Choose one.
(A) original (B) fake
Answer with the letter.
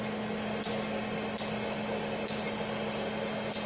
A